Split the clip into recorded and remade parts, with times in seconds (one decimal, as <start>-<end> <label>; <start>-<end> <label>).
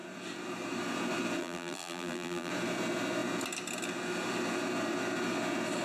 0.0-1.4 recorded; 1.4-2.5 remade; 2.5-5.8 recorded